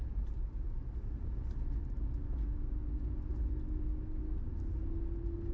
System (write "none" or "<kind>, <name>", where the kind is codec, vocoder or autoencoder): none